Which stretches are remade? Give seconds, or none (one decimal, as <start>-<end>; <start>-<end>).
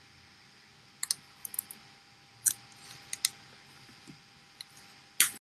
none